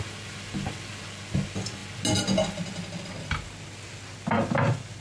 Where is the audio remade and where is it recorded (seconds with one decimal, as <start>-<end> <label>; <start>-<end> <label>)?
0.0-5.0 recorded